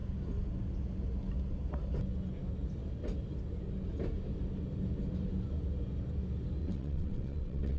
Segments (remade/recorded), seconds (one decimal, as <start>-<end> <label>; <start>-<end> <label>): 0.0-6.6 recorded; 6.6-7.8 remade